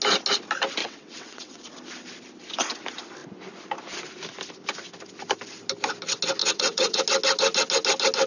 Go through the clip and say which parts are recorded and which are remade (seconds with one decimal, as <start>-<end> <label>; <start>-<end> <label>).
0.0-0.8 recorded; 0.8-1.6 remade; 1.6-6.4 recorded; 6.4-7.0 remade; 7.0-8.3 recorded